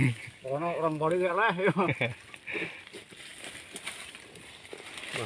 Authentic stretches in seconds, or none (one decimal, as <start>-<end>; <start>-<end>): 1.3-5.3